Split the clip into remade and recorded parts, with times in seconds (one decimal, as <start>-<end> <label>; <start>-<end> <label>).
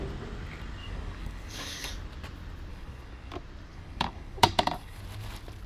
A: 0.0-0.8 recorded; 0.8-1.9 remade; 1.9-2.7 recorded; 2.7-3.3 remade; 3.3-3.7 recorded; 3.7-5.0 remade; 5.0-5.7 recorded